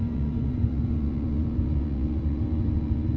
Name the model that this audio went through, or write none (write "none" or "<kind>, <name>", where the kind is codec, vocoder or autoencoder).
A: vocoder, Vocos